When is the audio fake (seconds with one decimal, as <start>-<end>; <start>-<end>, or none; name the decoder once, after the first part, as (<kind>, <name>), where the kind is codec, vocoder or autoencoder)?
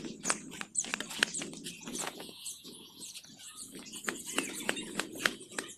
1.9-5.8 (vocoder, Vocos)